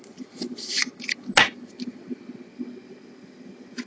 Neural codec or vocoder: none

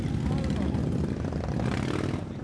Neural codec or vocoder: none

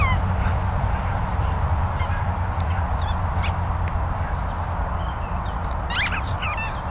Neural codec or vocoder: none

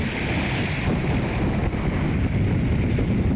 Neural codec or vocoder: none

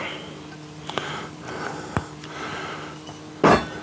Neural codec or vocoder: none